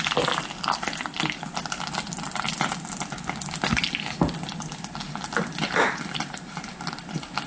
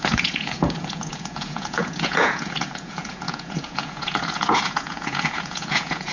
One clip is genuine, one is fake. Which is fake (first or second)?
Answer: second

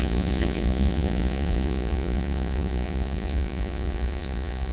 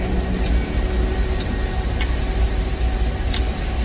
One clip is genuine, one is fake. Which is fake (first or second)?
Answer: first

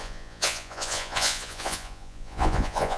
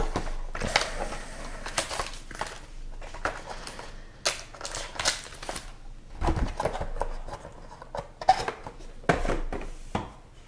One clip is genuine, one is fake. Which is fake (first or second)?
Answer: first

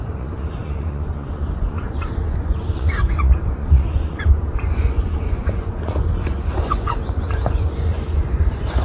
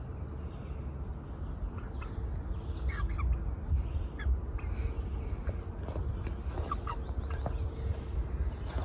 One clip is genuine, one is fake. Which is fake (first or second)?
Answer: first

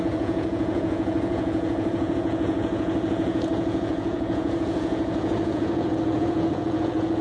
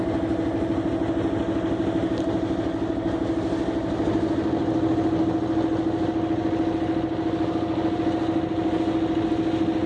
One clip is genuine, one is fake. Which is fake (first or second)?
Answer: first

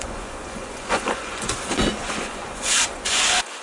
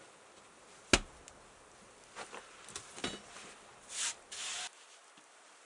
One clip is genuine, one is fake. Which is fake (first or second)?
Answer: first